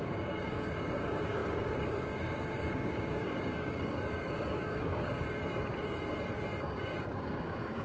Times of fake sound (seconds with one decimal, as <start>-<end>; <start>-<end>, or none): 0.0-5.4; 6.6-7.8